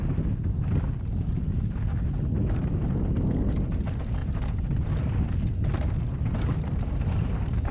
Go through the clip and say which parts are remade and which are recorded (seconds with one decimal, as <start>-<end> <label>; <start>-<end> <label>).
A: 0.0-4.2 recorded; 4.2-4.9 remade; 4.9-7.7 recorded